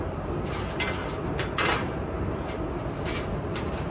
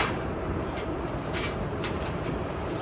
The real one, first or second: first